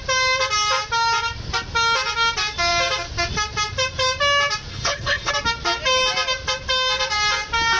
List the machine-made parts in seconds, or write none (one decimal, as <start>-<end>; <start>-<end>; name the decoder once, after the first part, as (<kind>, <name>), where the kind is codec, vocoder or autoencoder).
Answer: 4.7-5.3 (codec, HILCodec)